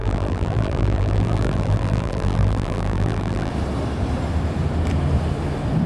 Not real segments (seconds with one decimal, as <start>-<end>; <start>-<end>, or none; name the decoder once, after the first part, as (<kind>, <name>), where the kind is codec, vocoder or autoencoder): 0.0-3.5 (vocoder, BigVGAN v2)